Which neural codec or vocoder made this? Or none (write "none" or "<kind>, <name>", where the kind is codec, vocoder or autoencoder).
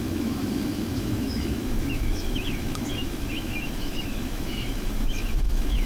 autoencoder, DAC-VAE